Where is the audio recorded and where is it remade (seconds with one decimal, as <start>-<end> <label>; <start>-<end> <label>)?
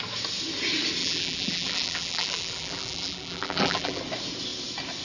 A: 0.0-1.0 recorded; 1.0-4.0 remade; 4.0-5.0 recorded